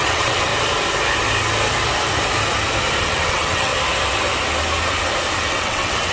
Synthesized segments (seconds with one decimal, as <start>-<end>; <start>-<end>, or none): 0.0-0.5; 3.0-3.7; 5.5-6.1